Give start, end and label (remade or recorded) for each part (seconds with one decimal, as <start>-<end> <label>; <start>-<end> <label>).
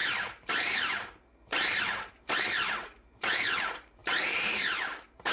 0.0-5.3 remade